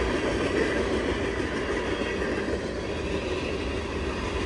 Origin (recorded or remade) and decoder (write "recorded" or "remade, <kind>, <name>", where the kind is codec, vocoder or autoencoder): recorded